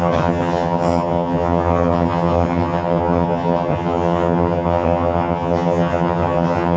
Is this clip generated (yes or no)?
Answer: yes